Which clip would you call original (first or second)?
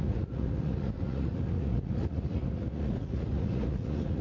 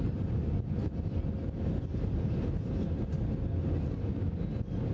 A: second